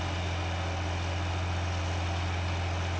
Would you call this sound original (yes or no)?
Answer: yes